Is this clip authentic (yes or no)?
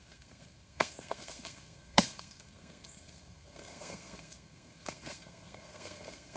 no